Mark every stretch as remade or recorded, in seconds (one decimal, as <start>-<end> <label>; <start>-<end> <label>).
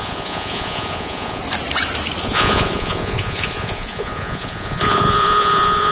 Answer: 0.0-1.4 remade; 1.4-2.2 recorded; 2.2-5.9 remade